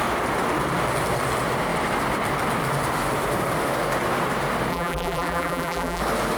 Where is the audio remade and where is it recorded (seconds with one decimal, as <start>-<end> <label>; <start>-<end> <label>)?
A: 0.0-4.7 recorded; 4.7-6.0 remade; 6.0-6.4 recorded